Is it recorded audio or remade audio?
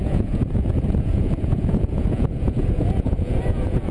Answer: remade